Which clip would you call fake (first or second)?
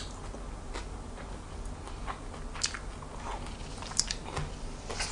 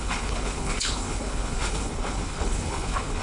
second